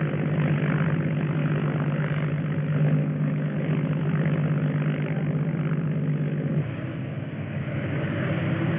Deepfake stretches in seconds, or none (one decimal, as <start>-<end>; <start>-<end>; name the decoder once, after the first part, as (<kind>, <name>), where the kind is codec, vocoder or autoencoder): 1.4-2.3 (codec, DAC); 3.0-3.7; 6.5-8.3